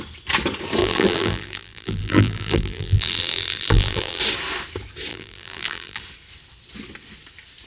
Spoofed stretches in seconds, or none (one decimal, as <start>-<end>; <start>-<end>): 0.8-4.2; 5.1-6.0